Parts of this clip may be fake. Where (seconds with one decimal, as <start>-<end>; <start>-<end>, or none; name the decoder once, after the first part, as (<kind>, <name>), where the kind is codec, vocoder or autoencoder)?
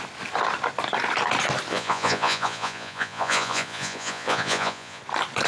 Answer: 1.7-5.0 (vocoder, Vocos)